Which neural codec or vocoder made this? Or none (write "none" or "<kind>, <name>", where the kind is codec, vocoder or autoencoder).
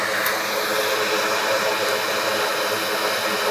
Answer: none